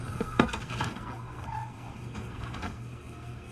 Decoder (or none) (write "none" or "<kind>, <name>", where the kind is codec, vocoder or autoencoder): codec, SNAC